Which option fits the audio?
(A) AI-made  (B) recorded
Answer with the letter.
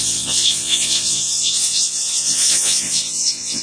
A